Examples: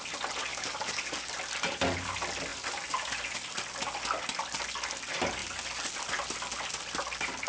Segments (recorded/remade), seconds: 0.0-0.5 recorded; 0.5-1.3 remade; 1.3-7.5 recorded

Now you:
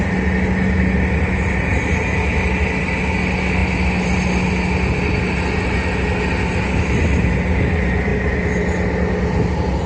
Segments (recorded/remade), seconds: 0.0-9.9 recorded